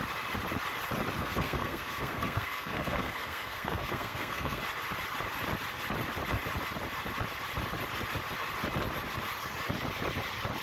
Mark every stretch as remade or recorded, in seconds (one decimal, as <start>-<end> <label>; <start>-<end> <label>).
0.0-1.2 recorded; 1.2-4.6 remade; 4.6-10.6 recorded